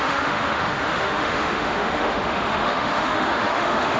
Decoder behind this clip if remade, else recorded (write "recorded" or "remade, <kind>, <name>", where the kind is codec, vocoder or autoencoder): remade, autoencoder, DAC-VAE